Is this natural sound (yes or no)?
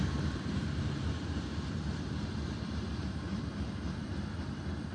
no